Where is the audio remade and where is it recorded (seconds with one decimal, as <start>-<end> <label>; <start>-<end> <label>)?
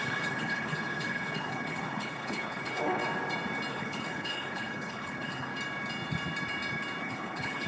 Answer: 0.0-3.0 remade; 3.0-3.7 recorded; 3.7-5.5 remade; 5.5-7.0 recorded; 7.0-7.7 remade